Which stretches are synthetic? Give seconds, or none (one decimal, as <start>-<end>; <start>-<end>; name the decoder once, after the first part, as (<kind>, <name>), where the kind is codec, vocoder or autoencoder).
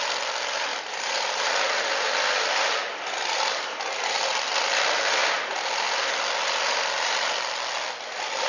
none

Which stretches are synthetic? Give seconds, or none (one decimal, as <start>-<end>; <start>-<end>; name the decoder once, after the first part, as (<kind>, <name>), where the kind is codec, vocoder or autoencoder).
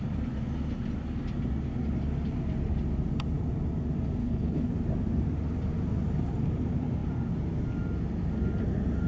4.2-4.7 (codec, HILCodec)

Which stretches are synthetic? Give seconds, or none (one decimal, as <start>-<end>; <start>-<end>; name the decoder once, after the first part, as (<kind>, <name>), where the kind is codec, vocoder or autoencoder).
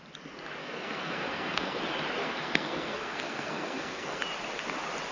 0.6-1.8 (codec, SNAC); 2.2-4.2